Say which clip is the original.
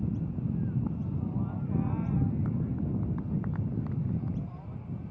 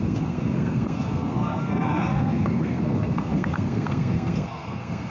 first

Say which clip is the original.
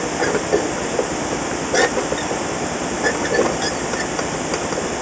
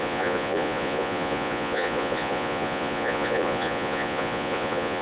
first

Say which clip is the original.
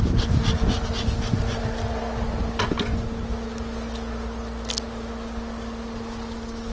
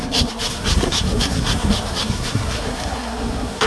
first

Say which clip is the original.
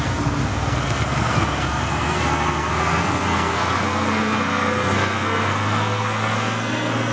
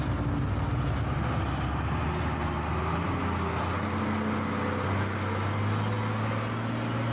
second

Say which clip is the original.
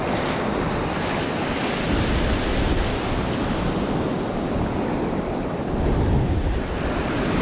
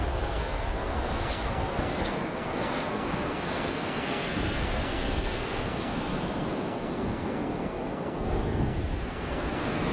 first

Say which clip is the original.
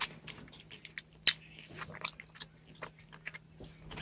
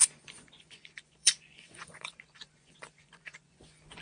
first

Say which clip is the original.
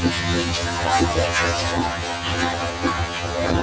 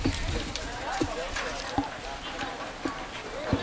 second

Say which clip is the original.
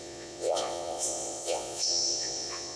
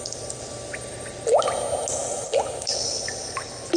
second